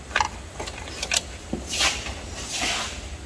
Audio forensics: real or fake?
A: real